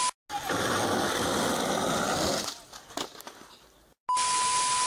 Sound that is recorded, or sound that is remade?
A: recorded